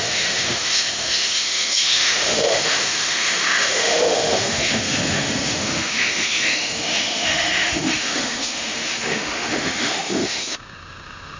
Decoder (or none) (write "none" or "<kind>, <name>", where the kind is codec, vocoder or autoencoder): autoencoder, DAC-VAE